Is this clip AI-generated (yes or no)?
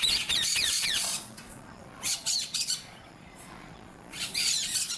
yes